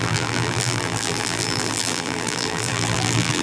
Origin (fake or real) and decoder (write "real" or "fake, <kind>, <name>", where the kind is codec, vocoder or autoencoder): fake, vocoder, BigVGAN v2